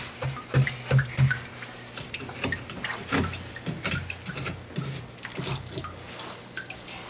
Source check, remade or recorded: recorded